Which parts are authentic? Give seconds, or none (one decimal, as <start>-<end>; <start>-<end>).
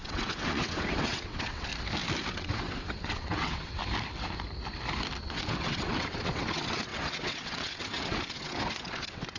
1.7-2.3; 3.8-5.2